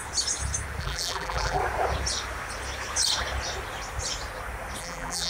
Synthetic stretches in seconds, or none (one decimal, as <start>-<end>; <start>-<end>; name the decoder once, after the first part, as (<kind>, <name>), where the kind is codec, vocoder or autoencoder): 0.8-1.6 (vocoder, BigVGAN v2); 4.8-5.3